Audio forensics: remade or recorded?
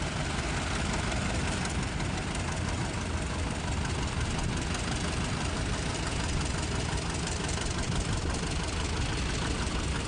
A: recorded